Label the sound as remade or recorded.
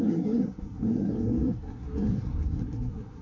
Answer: remade